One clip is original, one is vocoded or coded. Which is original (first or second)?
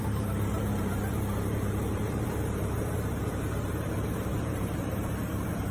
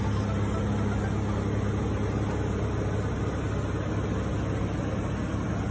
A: second